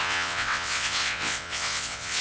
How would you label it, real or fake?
fake